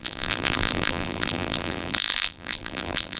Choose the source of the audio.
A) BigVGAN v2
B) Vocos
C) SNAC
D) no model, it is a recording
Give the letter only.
A